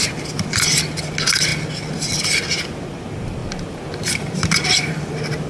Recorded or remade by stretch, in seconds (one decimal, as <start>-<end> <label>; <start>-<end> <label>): 0.0-3.4 recorded; 3.4-4.9 remade; 4.9-5.5 recorded